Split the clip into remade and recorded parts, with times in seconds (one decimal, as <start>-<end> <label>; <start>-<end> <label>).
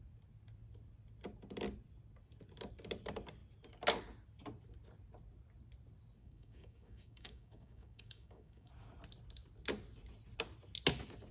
0.0-6.2 recorded; 6.2-8.7 remade; 8.7-11.3 recorded